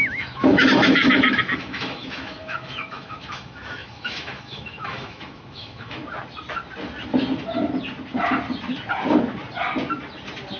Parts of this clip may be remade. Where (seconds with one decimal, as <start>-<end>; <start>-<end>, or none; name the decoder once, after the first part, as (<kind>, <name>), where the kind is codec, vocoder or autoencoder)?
0.0-6.0 (autoencoder, DAC-VAE)